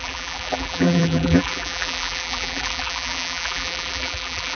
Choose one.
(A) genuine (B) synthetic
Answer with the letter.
B